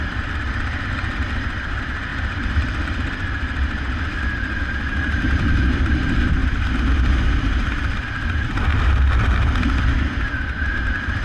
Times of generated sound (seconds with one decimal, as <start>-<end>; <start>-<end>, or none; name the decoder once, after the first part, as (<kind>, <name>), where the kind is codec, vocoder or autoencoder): 0.0-6.4 (vocoder, BigVGAN v2); 8.0-8.7; 10.6-11.2